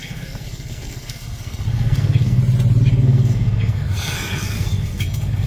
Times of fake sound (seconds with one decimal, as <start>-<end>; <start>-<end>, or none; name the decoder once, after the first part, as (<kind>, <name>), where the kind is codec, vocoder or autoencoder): 0.0-2.4 (codec, SNAC); 2.9-5.5